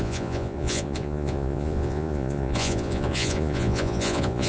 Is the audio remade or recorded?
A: remade